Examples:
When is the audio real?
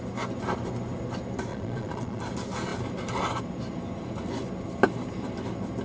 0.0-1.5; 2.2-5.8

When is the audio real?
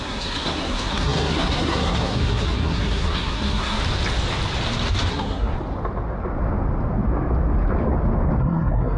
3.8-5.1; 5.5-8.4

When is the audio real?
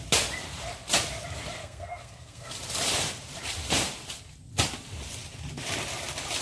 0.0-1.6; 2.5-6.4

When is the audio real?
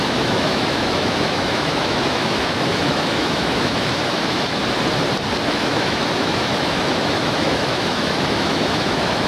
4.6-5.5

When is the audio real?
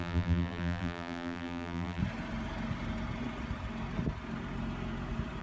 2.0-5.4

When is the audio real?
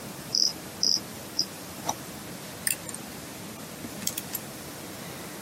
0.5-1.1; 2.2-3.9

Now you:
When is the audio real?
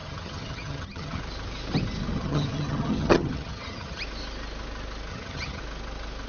1.2-2.1; 4.0-5.1; 5.6-6.3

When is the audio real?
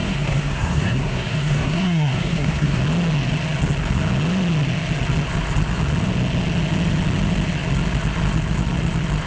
2.8-9.3